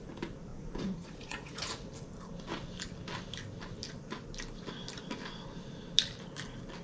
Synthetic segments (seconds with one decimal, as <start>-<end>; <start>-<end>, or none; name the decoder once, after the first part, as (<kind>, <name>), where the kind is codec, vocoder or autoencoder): 0.5-1.8 (vocoder, Vocos)